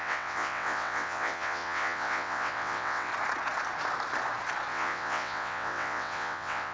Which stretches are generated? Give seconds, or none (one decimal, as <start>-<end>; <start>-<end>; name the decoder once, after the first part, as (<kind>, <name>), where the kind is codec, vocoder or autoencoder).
0.0-3.1 (vocoder, WaveNeXt); 4.7-6.7